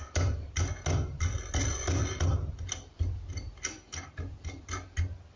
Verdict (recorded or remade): recorded